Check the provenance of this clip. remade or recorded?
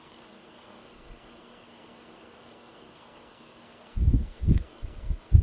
remade